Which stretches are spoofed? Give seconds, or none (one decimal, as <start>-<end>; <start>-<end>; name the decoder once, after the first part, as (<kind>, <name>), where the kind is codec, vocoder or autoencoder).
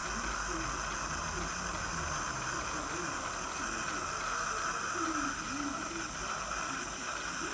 none